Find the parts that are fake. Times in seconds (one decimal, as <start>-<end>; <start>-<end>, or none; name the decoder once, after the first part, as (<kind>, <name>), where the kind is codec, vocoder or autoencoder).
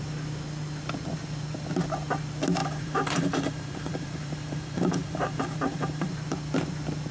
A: 2.6-6.1 (vocoder, BigVGAN v2)